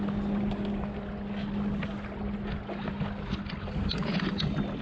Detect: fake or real real